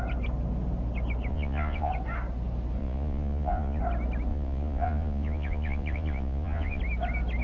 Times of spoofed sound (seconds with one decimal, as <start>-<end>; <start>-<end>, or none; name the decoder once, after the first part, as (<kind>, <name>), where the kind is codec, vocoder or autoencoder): 1.3-1.9 (vocoder, Vocos); 2.8-3.8; 4.3-6.8